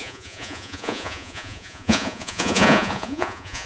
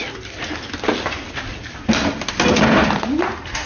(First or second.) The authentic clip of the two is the second